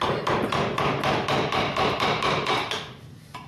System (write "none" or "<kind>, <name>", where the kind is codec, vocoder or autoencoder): none